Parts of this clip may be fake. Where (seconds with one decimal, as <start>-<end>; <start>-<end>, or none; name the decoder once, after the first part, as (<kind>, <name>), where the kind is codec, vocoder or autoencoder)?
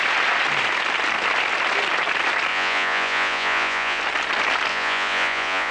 2.5-4.0 (vocoder, Vocos); 4.7-5.7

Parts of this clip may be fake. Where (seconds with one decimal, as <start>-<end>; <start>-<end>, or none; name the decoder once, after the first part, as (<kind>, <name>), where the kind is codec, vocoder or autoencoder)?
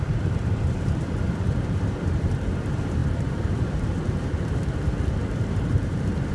0.0-6.3 (vocoder, BigVGAN v2)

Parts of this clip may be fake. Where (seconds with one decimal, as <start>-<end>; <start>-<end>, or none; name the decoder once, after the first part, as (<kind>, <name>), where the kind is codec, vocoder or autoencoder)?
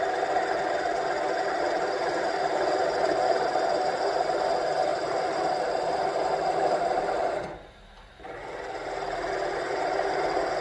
4.9-7.4 (vocoder, BigVGAN v2)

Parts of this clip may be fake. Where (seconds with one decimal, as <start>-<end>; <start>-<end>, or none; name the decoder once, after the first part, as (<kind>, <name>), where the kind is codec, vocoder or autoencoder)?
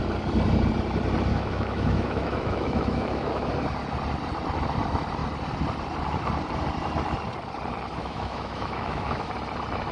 1.3-3.5 (autoencoder, DAC-VAE); 8.0-9.3